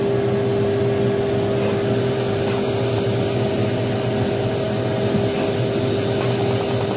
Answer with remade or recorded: recorded